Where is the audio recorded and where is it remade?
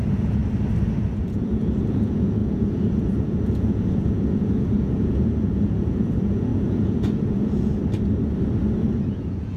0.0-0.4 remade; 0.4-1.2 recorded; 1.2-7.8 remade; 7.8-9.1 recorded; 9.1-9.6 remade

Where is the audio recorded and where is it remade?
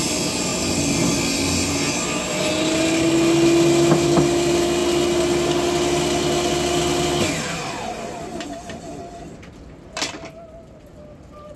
0.0-11.6 recorded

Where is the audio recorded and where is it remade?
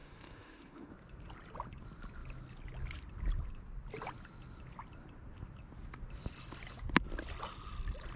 0.0-0.9 remade; 0.9-8.2 recorded